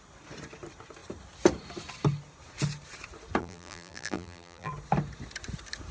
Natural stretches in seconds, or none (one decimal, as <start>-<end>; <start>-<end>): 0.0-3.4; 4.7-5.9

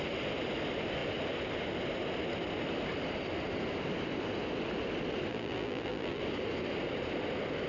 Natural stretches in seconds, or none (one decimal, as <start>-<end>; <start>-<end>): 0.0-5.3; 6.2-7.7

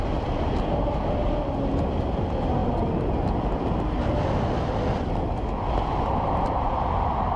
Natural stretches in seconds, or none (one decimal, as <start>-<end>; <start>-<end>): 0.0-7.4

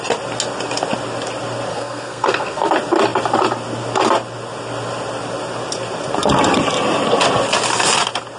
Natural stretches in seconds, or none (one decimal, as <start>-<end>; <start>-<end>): 0.0-1.7; 2.7-8.4

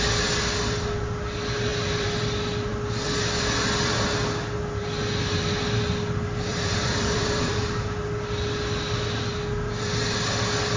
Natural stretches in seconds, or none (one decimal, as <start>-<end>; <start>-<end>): 0.0-1.7; 2.2-6.5; 7.6-10.8

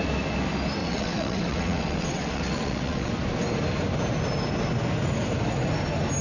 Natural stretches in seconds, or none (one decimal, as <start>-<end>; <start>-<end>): 0.0-0.8; 3.1-6.2

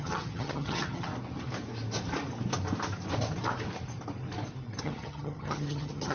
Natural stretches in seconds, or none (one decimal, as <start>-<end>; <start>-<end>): 1.1-4.8

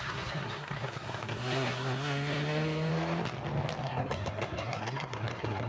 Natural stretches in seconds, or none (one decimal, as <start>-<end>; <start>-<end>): 2.9-3.8